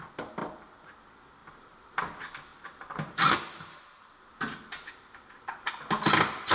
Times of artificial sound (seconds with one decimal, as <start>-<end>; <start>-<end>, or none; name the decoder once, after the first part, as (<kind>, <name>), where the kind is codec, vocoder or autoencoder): 0.4-1.0 (vocoder, BigVGAN v2); 1.4-2.0; 2.5-5.7